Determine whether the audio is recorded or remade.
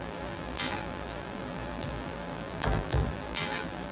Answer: remade